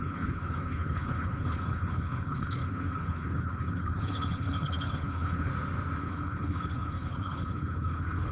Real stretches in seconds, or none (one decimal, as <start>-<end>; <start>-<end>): 5.5-6.0